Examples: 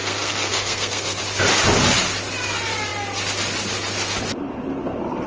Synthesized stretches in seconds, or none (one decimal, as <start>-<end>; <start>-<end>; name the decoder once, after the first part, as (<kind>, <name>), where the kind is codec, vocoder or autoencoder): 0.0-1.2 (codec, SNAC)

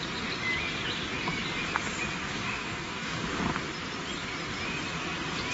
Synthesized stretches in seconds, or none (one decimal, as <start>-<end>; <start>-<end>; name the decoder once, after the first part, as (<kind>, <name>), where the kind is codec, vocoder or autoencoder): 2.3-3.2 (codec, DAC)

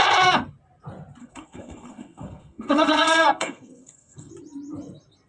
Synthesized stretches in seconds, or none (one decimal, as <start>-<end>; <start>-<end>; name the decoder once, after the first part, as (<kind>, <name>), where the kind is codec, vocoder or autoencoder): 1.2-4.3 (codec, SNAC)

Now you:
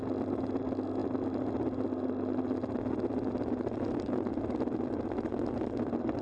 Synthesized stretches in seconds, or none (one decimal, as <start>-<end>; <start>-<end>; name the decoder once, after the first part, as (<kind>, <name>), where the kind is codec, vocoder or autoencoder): none

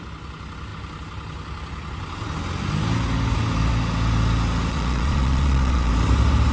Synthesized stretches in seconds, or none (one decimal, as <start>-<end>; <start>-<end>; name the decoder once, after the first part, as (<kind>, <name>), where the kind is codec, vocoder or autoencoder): 4.7-5.9 (vocoder, Vocos)

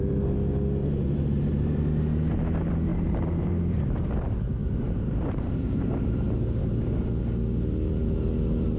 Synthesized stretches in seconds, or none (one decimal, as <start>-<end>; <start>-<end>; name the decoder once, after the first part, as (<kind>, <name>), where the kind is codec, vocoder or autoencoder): 0.8-1.8 (vocoder, BigVGAN v2); 2.9-3.9; 4.6-7.0